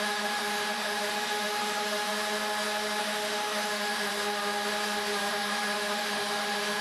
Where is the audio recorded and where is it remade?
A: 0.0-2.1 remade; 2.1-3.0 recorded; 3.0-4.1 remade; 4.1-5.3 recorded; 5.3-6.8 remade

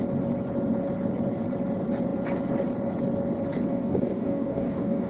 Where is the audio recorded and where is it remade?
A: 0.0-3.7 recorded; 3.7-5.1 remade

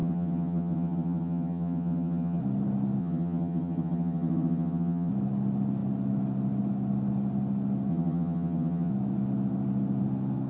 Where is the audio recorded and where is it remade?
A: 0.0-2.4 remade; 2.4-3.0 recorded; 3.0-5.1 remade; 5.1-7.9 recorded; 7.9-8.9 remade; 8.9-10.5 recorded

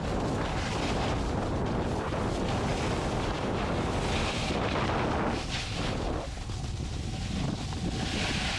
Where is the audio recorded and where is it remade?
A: 0.0-8.6 recorded

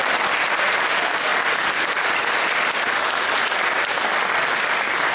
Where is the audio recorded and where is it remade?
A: 0.0-5.1 recorded

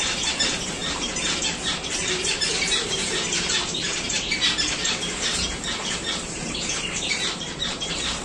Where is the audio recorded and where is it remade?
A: 0.0-8.2 remade